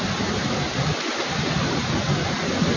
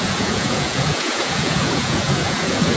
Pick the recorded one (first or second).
first